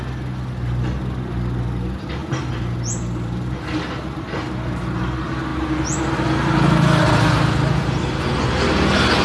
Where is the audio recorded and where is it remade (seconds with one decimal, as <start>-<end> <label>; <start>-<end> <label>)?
0.0-9.2 recorded